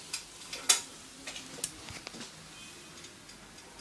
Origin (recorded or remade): recorded